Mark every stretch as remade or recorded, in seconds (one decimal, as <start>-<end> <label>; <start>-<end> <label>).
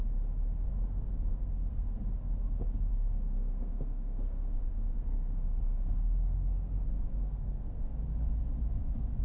0.0-0.7 recorded; 0.7-2.0 remade; 2.0-2.9 recorded; 2.9-7.8 remade; 7.8-9.2 recorded